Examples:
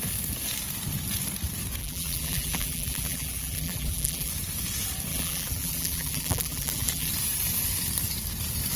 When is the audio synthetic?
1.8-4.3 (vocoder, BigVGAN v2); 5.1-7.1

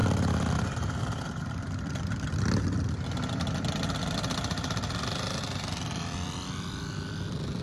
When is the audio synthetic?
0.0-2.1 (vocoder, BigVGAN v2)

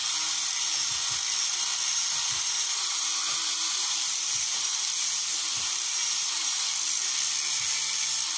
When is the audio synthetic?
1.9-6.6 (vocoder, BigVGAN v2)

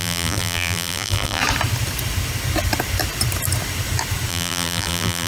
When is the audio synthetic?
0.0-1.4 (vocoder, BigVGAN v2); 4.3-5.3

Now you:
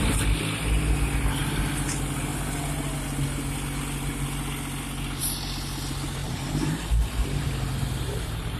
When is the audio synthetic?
6.2-8.6 (vocoder, BigVGAN v2)

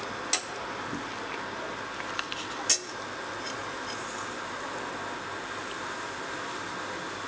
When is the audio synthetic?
3.6-4.9 (vocoder, BigVGAN v2); 5.6-6.7